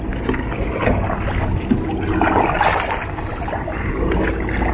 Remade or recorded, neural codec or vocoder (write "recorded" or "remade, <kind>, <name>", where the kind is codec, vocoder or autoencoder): recorded